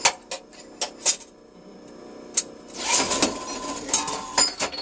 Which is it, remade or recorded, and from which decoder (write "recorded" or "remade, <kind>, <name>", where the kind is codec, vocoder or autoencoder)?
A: recorded